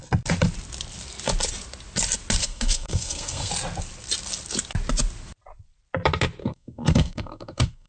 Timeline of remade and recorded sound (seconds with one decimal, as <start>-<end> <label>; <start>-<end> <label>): 0.0-2.4 recorded; 2.4-3.5 remade; 3.5-6.4 recorded; 6.4-7.9 remade